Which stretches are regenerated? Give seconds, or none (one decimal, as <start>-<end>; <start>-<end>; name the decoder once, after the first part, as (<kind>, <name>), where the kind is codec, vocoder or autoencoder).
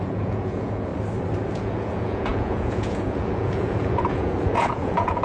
0.0-0.9 (vocoder, Vocos); 1.5-5.2